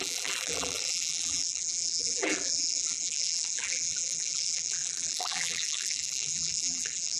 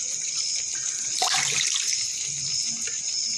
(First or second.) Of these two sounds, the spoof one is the first